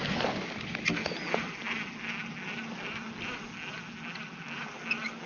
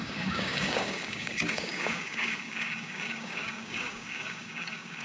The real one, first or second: first